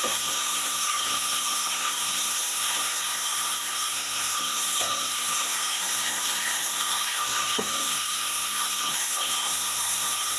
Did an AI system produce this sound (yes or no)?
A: yes